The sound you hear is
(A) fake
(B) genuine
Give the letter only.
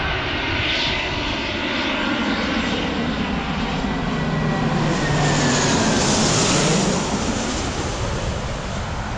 B